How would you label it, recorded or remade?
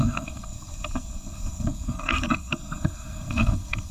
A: remade